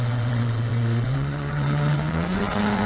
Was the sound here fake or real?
fake